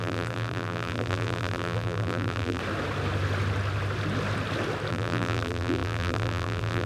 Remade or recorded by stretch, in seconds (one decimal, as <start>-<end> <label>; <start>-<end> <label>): 0.0-2.6 remade; 2.6-4.9 recorded; 4.9-6.9 remade